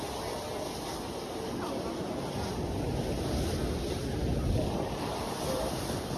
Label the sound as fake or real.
real